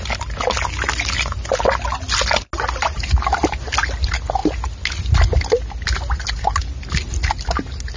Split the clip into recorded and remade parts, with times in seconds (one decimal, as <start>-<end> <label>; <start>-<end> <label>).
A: 0.0-8.0 recorded